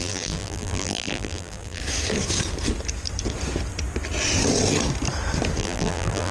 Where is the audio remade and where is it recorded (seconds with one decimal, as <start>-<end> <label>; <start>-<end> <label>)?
0.0-1.8 remade; 1.8-5.6 recorded; 5.6-6.3 remade